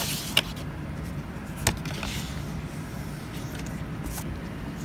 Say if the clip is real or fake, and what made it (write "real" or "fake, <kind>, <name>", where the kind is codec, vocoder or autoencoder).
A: real